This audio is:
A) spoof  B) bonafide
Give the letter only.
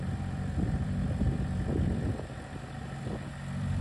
A